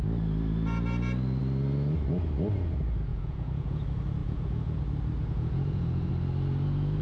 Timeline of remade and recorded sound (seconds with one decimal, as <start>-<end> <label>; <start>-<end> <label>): 0.0-3.1 recorded; 3.1-3.8 remade; 3.8-4.2 recorded; 4.2-4.8 remade; 4.8-5.2 recorded; 5.2-6.1 remade; 6.1-7.0 recorded